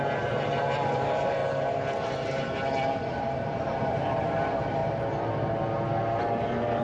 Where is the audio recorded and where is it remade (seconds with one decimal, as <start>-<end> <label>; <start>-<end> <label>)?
0.0-1.4 remade; 1.4-3.1 recorded; 3.1-4.8 remade; 4.8-6.8 recorded